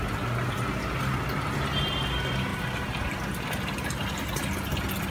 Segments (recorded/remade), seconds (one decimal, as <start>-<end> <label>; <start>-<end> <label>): 0.0-2.5 recorded; 2.5-3.1 remade; 3.1-5.1 recorded